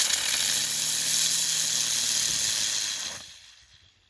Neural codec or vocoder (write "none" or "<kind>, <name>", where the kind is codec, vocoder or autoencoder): none